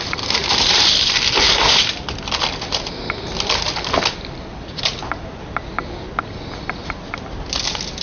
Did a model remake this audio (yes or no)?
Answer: no